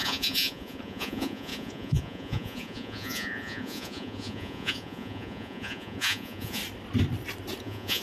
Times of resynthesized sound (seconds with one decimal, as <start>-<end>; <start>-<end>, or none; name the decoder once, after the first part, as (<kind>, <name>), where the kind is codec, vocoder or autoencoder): 0.0-6.6 (vocoder, Vocos); 7.6-8.0